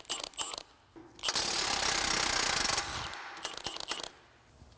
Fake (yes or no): no